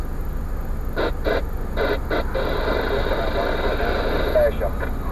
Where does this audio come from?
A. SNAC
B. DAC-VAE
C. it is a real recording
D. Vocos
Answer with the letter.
C